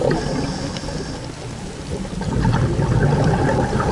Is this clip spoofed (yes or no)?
no